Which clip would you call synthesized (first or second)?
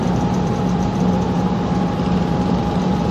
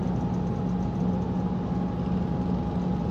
first